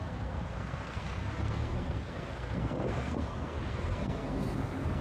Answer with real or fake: fake